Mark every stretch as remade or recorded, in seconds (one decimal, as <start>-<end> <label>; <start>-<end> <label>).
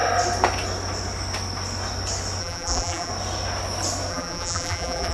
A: 0.0-2.4 recorded; 2.4-3.1 remade; 3.1-4.1 recorded; 4.1-5.1 remade